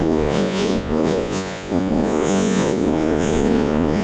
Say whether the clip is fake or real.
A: fake